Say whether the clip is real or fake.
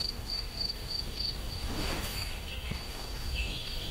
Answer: fake